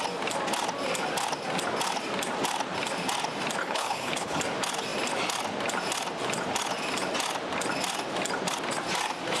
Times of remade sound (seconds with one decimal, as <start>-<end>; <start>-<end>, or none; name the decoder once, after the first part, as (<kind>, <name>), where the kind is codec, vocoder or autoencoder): 3.6-4.4 (codec, HILCodec)